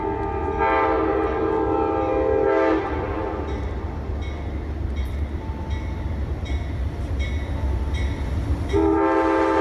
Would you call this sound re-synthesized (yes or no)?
no